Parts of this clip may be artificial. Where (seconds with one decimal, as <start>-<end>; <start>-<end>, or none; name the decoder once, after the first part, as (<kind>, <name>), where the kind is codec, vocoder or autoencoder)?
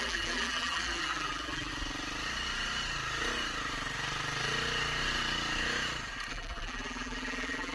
0.0-1.7 (vocoder, BigVGAN v2); 6.3-7.7